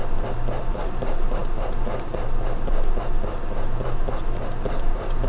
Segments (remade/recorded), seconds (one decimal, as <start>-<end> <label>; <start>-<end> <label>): 0.0-0.7 recorded; 0.7-1.4 remade; 1.4-4.6 recorded; 4.6-5.3 remade